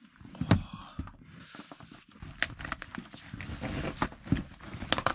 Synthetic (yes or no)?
no